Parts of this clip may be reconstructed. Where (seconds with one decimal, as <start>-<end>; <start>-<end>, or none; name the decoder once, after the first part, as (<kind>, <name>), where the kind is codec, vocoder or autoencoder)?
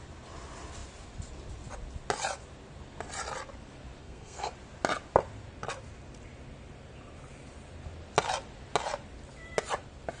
4.0-4.5 (codec, SNAC)